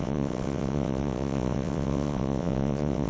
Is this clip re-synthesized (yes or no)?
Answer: yes